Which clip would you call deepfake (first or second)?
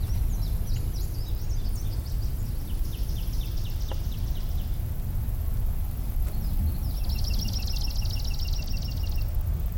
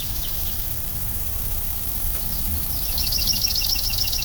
second